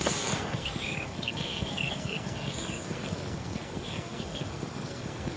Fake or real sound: fake